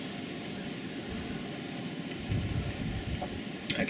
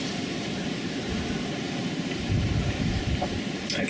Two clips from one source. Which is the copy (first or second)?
second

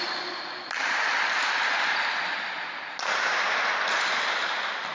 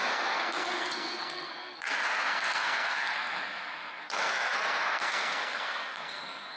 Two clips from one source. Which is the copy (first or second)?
second